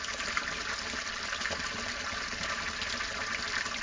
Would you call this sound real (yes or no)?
yes